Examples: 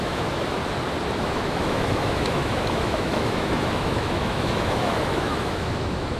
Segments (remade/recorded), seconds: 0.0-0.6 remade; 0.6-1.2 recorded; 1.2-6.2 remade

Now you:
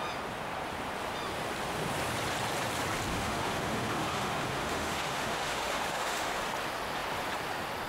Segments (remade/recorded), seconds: 0.0-3.1 recorded; 3.1-6.4 remade; 6.4-7.9 recorded

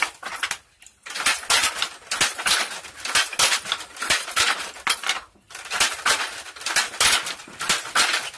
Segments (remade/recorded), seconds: 0.0-8.4 recorded